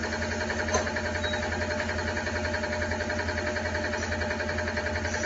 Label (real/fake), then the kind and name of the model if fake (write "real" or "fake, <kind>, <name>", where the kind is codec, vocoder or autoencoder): real